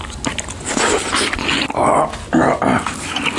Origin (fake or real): real